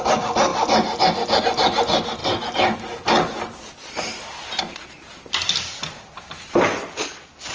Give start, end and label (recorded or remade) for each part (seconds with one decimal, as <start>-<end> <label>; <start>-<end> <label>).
0.0-7.5 recorded